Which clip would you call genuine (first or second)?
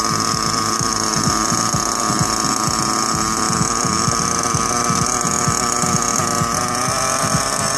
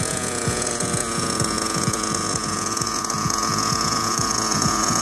first